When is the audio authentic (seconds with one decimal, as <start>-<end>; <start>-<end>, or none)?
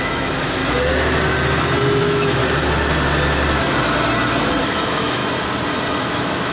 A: 0.6-2.0; 2.4-4.6; 5.2-6.0